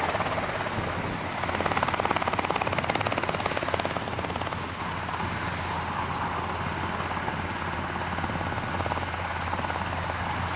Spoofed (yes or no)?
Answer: no